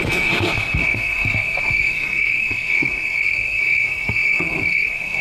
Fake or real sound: fake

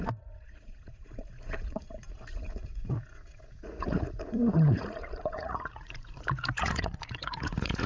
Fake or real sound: fake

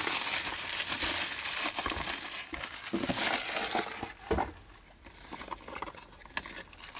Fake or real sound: real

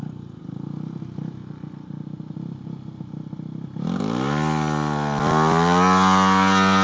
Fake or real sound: real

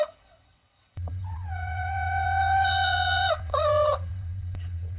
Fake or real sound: fake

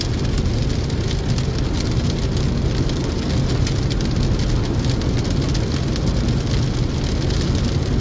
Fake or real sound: real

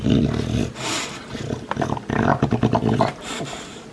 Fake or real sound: real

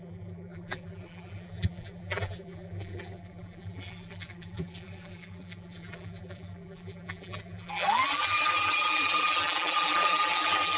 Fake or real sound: fake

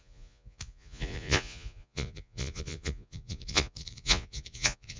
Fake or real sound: fake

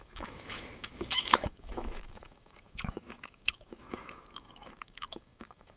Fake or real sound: fake